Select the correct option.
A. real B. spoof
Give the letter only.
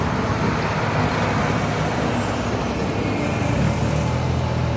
A